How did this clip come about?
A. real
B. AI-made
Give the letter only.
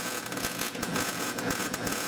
B